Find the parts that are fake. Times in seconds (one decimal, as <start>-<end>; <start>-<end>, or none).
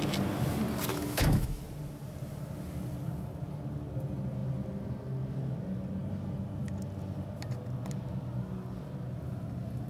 0.9-1.6